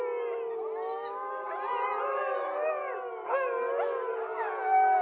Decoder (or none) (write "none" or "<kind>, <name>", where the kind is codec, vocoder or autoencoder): none